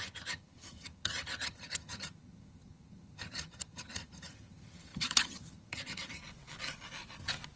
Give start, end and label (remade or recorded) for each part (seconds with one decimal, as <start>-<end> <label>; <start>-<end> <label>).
0.0-6.2 remade; 6.2-7.6 recorded